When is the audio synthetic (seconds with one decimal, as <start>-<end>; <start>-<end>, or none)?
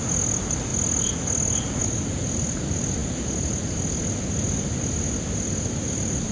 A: none